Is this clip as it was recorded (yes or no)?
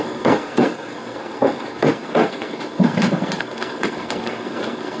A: no